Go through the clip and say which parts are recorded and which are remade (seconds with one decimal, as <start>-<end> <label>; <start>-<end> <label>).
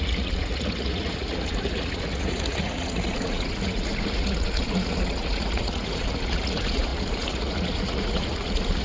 0.0-8.8 remade